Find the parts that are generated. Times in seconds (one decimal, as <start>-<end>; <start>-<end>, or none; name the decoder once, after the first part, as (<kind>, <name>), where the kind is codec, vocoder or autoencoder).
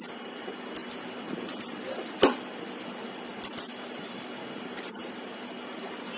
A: 0.8-1.6 (vocoder, BigVGAN v2)